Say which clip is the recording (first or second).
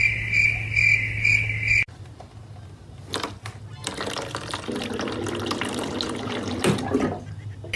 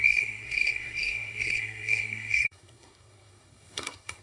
first